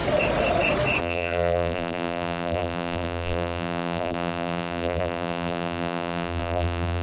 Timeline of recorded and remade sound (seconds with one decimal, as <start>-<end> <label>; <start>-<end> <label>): 0.0-1.0 recorded; 1.0-7.0 remade